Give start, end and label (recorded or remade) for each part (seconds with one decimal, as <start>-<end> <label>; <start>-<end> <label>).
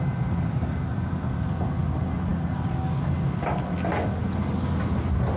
0.0-5.4 recorded